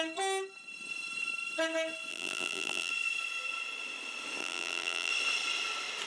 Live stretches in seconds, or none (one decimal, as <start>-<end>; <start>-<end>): 0.0-2.1; 2.9-4.4; 5.1-6.1